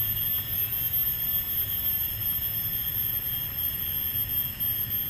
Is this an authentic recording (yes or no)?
yes